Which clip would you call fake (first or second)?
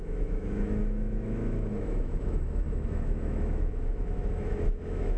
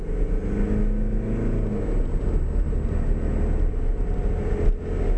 first